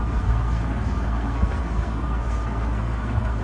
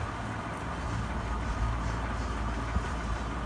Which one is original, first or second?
second